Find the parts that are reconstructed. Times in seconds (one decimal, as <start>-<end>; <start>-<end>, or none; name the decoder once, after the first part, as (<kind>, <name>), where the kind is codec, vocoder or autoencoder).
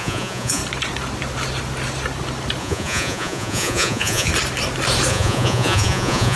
0.0-0.6 (vocoder, Vocos); 2.6-4.3; 5.1-6.4